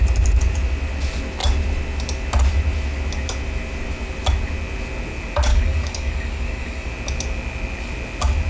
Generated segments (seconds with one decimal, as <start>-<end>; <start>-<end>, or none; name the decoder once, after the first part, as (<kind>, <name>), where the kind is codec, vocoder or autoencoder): 5.5-6.9 (codec, DAC)